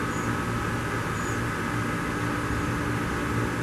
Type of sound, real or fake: real